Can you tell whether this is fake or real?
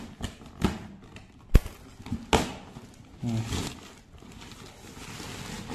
real